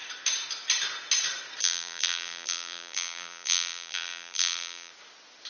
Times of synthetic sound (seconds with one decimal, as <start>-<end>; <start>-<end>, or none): 1.6-4.9